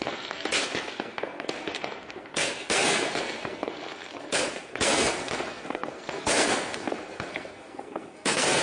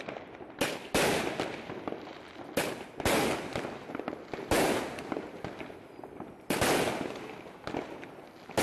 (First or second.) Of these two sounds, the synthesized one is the first